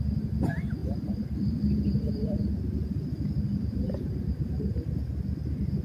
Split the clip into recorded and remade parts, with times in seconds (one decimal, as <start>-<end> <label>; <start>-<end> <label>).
0.0-0.8 recorded; 0.8-2.4 remade; 2.4-3.5 recorded; 3.5-4.8 remade; 4.8-5.8 recorded